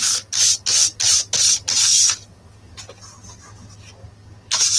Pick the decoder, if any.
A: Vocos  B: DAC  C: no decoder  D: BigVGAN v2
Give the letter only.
C